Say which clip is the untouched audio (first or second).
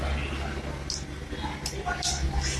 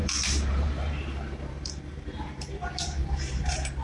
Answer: first